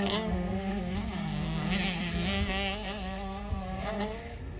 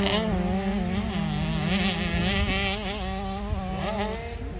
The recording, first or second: second